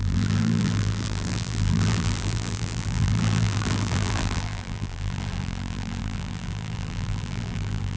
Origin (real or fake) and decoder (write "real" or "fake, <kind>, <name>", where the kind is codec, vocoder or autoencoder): fake, vocoder, BigVGAN v2